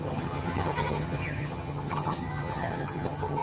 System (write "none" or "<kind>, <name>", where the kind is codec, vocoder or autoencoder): vocoder, HiFi-GAN